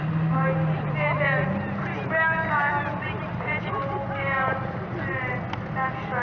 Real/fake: real